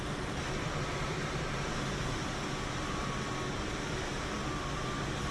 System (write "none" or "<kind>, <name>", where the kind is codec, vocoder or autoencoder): none